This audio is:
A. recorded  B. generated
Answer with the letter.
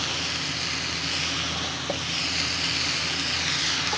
A